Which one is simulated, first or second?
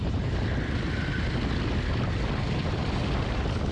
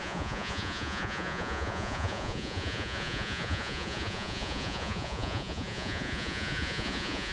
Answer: second